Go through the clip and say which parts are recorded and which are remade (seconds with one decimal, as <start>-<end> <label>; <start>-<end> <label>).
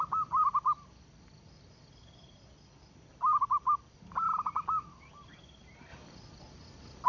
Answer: 0.0-7.1 recorded